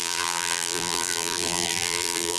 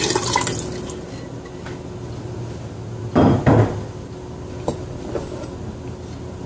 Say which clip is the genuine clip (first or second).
second